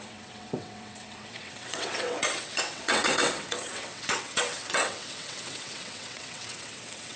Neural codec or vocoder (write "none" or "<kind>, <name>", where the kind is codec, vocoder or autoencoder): vocoder, WaveNeXt